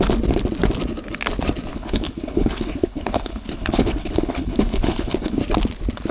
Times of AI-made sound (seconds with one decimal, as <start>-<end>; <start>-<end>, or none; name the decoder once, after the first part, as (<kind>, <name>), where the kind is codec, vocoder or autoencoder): 1.7-5.4 (codec, HILCodec)